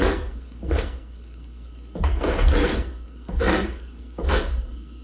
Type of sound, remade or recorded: remade